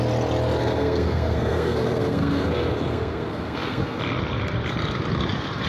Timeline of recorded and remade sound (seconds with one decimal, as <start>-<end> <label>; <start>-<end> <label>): 0.0-0.6 recorded; 0.6-4.0 remade; 4.0-5.7 recorded